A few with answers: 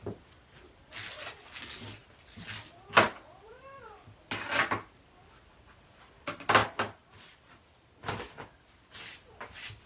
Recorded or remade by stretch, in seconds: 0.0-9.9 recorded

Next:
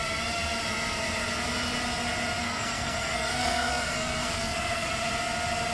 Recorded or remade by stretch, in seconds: 0.0-2.4 recorded; 2.4-4.9 remade; 4.9-5.7 recorded

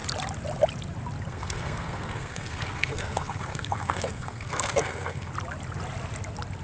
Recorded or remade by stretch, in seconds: 0.0-1.3 recorded; 1.3-5.3 remade; 5.3-6.6 recorded